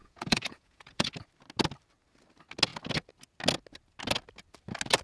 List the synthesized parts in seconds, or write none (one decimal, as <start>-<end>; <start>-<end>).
0.0-1.1